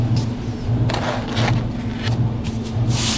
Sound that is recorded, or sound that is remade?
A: recorded